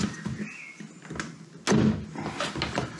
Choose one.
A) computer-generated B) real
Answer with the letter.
B